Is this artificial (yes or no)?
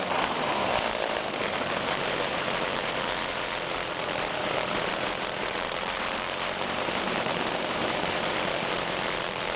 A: yes